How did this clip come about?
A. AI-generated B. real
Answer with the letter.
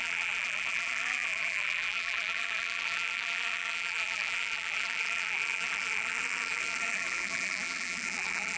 A